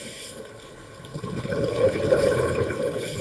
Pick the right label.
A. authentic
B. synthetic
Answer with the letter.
B